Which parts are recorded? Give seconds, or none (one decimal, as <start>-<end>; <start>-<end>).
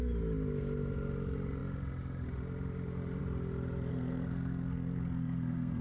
0.0-3.9